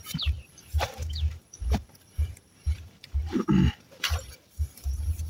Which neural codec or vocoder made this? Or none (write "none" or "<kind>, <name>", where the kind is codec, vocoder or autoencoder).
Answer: vocoder, BigVGAN v2